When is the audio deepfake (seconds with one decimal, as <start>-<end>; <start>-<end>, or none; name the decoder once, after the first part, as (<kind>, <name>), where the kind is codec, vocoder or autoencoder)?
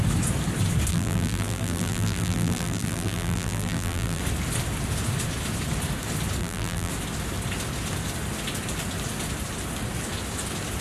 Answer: 0.9-4.2 (vocoder, BigVGAN v2); 6.4-6.9